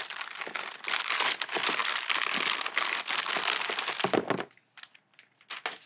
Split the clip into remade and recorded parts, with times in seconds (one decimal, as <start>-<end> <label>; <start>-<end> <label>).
0.0-5.9 recorded